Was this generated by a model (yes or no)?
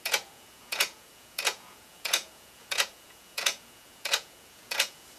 yes